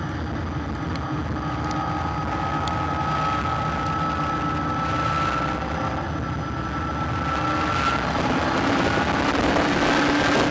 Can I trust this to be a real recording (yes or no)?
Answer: yes